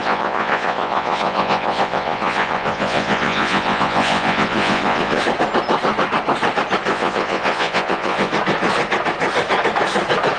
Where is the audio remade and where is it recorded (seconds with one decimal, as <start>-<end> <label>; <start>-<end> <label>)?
0.0-5.2 remade; 5.2-6.9 recorded; 6.9-8.3 remade; 8.3-10.4 recorded